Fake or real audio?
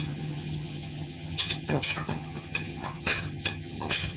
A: fake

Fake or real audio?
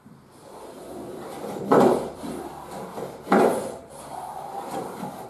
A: fake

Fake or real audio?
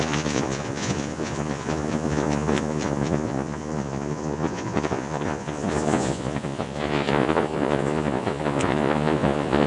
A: fake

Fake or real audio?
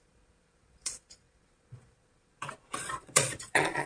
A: fake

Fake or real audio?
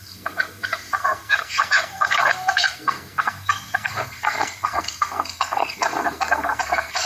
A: fake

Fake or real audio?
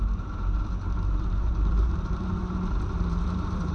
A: fake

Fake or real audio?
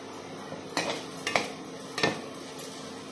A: real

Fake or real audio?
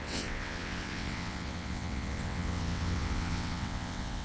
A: fake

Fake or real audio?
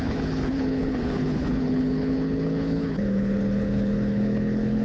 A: fake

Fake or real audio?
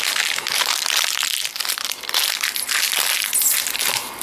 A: real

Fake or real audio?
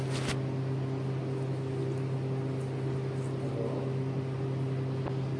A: real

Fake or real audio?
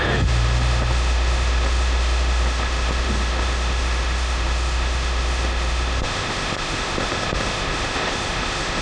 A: fake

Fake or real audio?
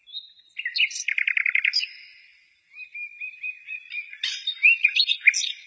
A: real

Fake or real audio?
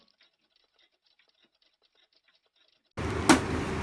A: real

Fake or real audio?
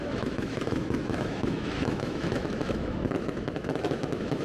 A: fake